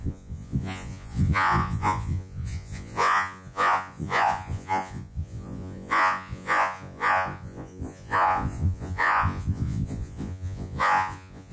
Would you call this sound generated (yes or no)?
yes